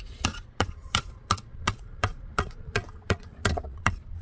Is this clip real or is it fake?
fake